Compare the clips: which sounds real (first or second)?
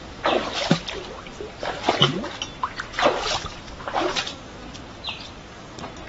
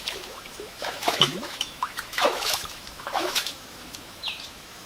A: first